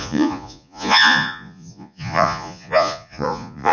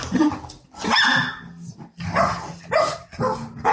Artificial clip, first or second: first